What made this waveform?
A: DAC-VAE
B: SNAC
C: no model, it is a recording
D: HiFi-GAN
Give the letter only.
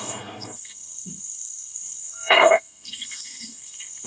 B